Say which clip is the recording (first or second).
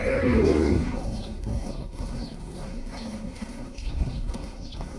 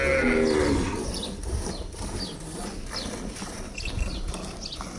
second